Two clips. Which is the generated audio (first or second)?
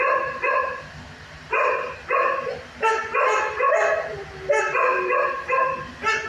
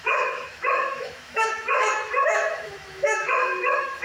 second